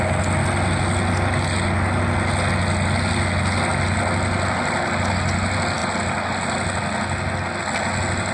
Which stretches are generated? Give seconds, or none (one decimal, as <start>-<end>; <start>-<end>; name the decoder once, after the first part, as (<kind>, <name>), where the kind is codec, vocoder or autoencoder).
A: none